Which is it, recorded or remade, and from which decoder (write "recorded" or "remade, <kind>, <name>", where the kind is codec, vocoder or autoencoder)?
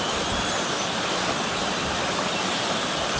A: recorded